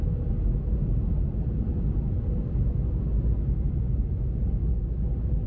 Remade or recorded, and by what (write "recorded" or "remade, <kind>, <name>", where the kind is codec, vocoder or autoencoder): recorded